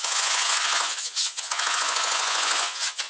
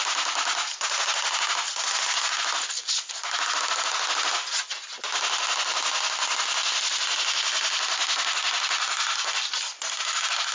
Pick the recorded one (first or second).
second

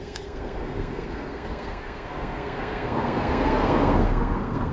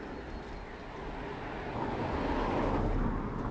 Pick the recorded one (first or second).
second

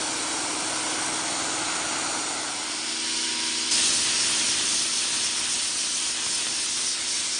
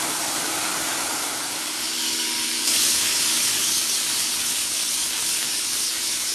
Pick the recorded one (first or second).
first